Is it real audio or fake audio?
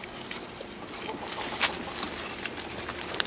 fake